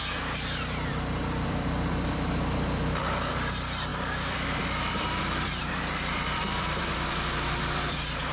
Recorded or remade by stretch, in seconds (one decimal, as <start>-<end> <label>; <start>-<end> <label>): 0.0-8.3 remade

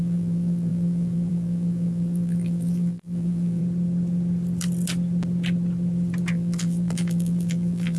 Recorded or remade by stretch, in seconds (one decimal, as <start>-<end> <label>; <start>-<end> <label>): 0.0-3.6 remade; 3.6-6.3 recorded; 6.3-8.0 remade

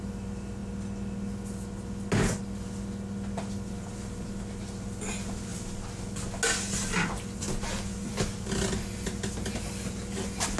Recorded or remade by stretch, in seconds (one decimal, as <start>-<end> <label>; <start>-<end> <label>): 0.0-10.6 recorded

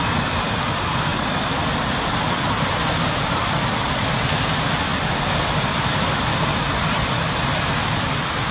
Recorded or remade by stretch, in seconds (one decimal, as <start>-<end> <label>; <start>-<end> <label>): 0.0-1.1 remade; 1.1-2.9 recorded; 2.9-8.5 remade

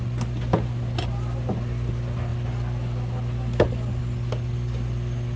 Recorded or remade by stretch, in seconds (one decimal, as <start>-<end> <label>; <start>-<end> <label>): 0.0-5.4 recorded

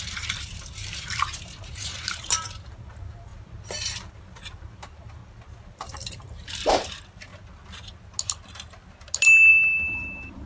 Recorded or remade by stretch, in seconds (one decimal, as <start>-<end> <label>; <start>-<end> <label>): 0.0-3.3 remade; 3.3-4.1 recorded; 4.1-5.2 remade; 5.2-6.1 recorded; 6.1-7.3 remade; 7.3-9.5 recorded; 9.5-10.5 remade

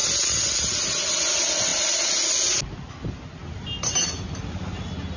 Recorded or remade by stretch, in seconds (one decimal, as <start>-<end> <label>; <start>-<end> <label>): 0.0-5.2 recorded

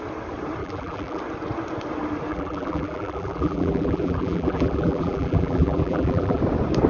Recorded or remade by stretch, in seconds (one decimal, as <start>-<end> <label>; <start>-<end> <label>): 0.0-0.6 recorded; 0.6-1.2 remade; 1.2-2.3 recorded; 2.3-6.4 remade; 6.4-6.9 recorded